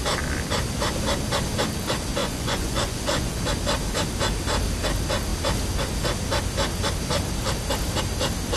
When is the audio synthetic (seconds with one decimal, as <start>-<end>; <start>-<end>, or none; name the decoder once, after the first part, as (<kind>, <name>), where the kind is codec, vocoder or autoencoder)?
2.2-3.4 (vocoder, Vocos)